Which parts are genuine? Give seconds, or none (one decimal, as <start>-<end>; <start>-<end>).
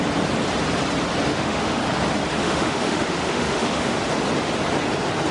0.0-1.3; 1.8-2.4; 4.0-5.3